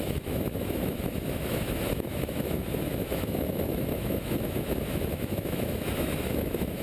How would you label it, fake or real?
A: fake